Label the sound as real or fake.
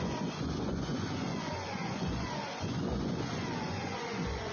fake